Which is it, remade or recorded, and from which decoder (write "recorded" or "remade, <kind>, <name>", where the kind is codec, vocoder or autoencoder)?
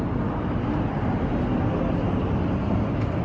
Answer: recorded